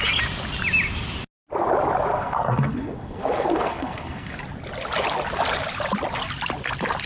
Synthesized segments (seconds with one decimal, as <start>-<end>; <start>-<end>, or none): 2.1-4.4